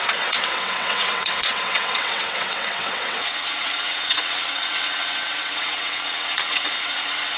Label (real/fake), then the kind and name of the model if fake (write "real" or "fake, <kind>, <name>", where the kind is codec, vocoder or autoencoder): fake, vocoder, WaveNeXt